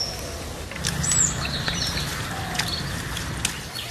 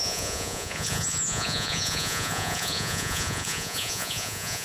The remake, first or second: second